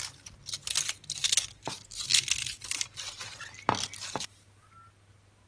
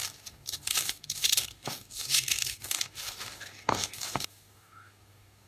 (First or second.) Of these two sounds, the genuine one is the first